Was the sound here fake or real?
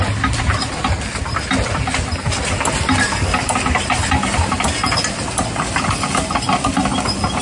real